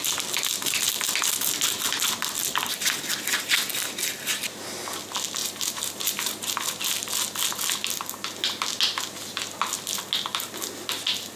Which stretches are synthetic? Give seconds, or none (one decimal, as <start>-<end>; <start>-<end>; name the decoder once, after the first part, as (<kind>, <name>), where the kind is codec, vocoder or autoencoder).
5.4-6.5 (vocoder, BigVGAN v2)